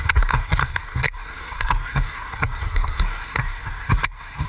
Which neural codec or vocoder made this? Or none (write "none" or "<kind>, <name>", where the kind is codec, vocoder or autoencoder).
codec, SNAC